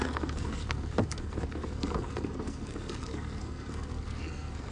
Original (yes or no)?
no